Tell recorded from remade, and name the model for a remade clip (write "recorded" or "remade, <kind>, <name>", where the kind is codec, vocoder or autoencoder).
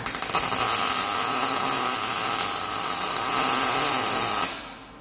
recorded